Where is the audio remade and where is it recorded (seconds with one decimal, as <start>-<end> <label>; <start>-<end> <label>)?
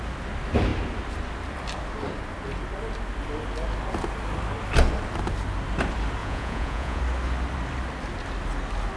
0.0-6.2 recorded; 6.2-7.0 remade; 7.0-9.0 recorded